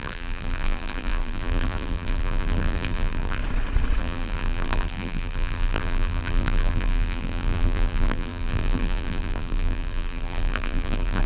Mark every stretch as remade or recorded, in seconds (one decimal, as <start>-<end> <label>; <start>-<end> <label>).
0.0-3.4 remade; 3.4-4.0 recorded; 4.0-11.3 remade